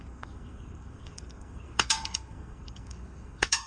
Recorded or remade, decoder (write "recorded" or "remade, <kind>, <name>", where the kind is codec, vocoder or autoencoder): remade, codec, SNAC